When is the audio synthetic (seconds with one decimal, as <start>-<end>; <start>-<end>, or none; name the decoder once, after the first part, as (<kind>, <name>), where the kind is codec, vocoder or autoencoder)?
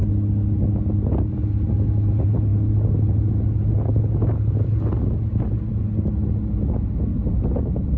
none